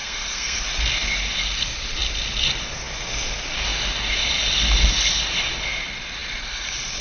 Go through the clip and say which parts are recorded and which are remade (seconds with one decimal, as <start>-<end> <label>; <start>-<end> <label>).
0.0-0.6 remade; 0.6-7.0 recorded

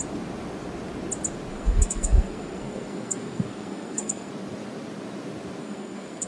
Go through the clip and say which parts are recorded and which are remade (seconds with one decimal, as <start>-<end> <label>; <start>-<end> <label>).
0.0-1.5 recorded; 1.5-4.3 remade; 4.3-5.6 recorded; 5.6-6.3 remade

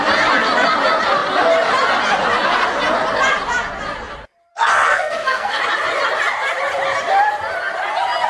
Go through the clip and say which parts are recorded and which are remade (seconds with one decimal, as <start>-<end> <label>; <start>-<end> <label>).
0.0-4.5 recorded; 4.5-5.6 remade; 5.6-8.3 recorded

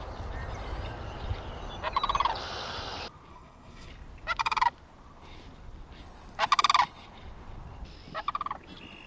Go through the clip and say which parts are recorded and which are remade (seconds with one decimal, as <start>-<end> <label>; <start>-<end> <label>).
0.0-3.3 recorded; 3.3-3.9 remade; 3.9-9.1 recorded

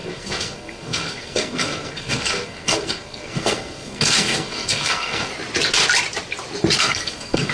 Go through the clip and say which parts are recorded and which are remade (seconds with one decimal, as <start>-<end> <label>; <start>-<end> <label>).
0.0-5.3 remade; 5.3-6.8 recorded; 6.8-7.5 remade

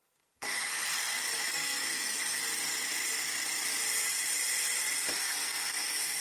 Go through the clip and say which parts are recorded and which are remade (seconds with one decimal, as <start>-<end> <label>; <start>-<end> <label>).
0.0-2.4 remade; 2.4-5.2 recorded; 5.2-6.2 remade

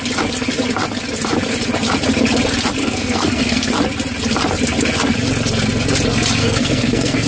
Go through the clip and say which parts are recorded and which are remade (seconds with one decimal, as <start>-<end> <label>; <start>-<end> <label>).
0.0-2.8 recorded; 2.8-3.7 remade; 3.7-6.4 recorded; 6.4-7.3 remade